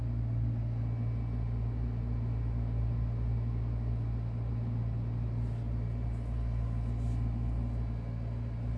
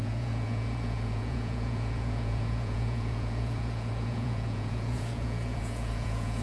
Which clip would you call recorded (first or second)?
first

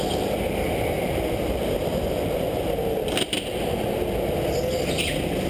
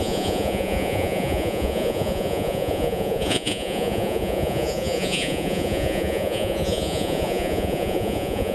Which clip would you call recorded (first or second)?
first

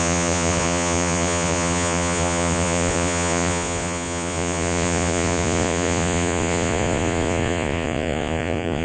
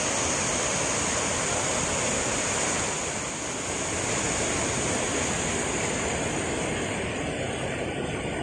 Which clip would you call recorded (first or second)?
second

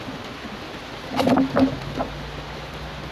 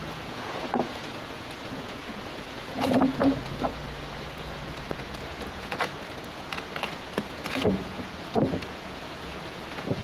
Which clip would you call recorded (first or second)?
first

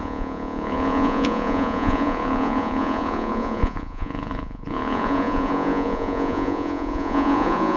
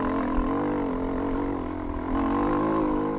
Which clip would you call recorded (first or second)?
second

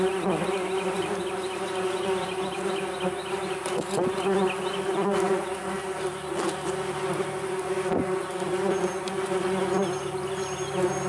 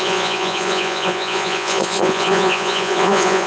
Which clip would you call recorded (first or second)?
first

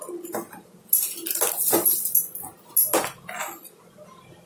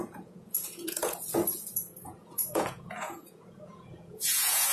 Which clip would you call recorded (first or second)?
first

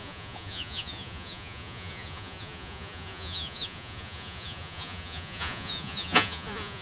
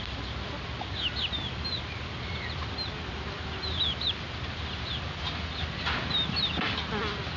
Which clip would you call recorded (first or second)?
second